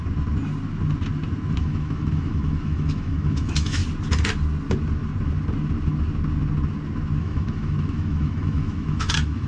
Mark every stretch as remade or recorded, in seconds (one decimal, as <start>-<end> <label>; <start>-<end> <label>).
0.0-1.6 recorded; 1.6-3.8 remade; 3.8-7.2 recorded; 7.2-9.5 remade